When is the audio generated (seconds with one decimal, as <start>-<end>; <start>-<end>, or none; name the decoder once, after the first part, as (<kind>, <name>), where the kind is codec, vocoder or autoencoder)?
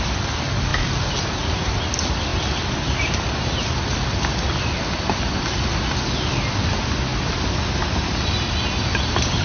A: none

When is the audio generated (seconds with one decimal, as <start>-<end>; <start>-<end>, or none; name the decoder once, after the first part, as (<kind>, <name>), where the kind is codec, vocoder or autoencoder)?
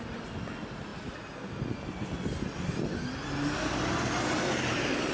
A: none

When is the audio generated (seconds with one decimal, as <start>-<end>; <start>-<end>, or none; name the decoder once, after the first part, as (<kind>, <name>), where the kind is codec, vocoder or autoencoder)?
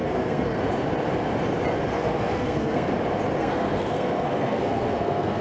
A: 0.0-0.6 (codec, SNAC); 1.9-2.9; 3.4-5.4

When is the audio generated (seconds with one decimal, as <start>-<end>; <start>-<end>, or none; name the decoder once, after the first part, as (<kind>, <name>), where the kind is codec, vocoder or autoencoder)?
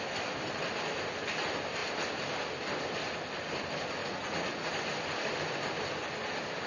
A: 4.0-4.7 (vocoder, Vocos)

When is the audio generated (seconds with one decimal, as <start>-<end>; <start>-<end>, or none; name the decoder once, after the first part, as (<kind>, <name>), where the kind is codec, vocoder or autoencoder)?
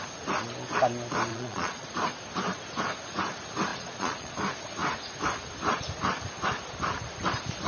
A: 1.3-1.9 (vocoder, Vocos); 3.7-4.3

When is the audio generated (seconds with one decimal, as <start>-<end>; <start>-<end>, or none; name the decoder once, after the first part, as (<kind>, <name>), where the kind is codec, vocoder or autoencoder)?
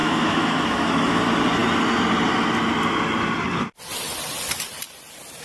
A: 0.0-1.2 (autoencoder, DAC-VAE)